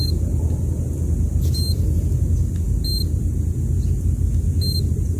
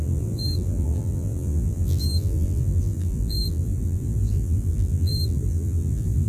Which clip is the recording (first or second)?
first